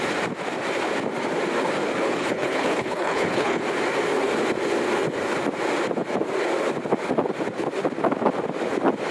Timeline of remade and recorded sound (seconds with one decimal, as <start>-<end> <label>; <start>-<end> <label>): 0.0-2.2 recorded; 2.2-3.6 remade; 3.6-9.1 recorded